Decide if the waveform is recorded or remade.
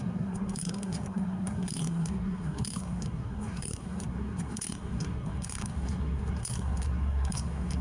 remade